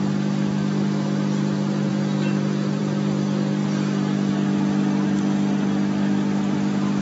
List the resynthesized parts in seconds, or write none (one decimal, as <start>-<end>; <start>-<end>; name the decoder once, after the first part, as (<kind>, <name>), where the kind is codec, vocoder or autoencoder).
none